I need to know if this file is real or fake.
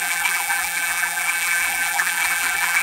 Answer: fake